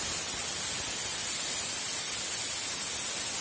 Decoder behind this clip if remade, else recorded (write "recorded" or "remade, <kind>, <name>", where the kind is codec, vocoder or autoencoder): recorded